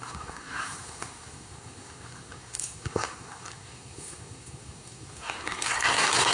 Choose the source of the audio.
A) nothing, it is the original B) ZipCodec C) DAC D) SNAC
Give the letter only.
D